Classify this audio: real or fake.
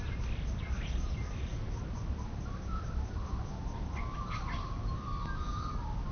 real